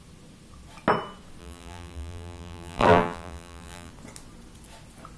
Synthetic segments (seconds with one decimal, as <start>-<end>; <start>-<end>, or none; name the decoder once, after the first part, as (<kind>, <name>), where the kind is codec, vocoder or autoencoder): 1.4-3.9 (vocoder, BigVGAN v2)